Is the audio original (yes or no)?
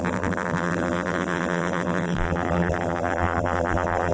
no